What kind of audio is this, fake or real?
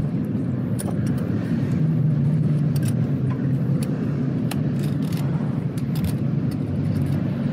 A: fake